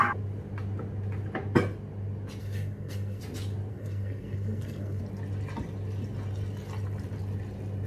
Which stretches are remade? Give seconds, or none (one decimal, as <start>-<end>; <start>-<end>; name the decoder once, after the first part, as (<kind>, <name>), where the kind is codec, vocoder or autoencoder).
2.4-3.2 (codec, SNAC); 3.7-5.0